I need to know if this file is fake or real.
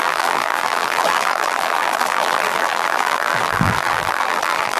fake